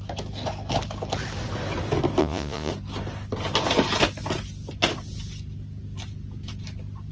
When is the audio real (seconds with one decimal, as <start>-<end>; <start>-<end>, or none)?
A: 0.0-2.2; 2.7-7.1